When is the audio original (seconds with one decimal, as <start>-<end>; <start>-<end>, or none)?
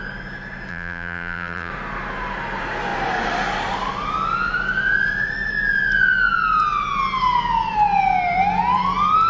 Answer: 0.0-0.7; 1.7-9.3